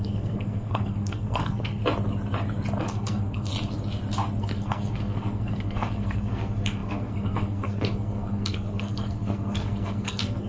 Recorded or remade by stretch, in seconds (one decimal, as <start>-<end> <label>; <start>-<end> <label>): 0.0-1.8 remade; 1.8-2.8 recorded; 2.8-3.5 remade; 3.5-4.4 recorded; 4.4-10.5 remade